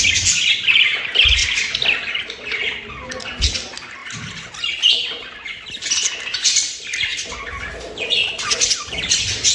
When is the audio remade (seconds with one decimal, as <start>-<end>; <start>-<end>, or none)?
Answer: 1.4-2.2; 4.0-5.9